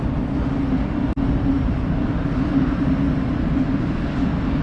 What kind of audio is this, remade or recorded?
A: recorded